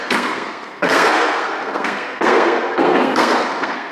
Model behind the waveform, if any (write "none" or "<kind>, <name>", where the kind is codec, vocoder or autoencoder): codec, SNAC